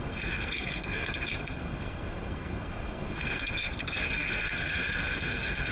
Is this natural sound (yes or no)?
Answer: no